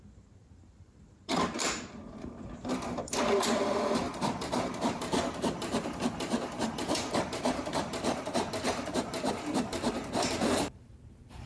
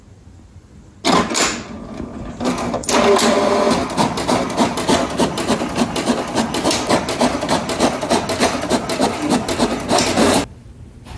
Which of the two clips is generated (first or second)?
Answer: first